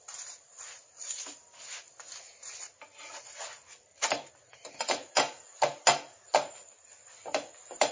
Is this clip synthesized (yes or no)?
no